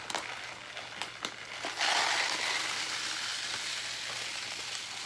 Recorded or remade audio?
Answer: recorded